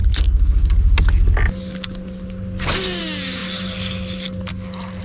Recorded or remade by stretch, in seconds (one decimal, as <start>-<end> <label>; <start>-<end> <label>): 0.0-5.0 recorded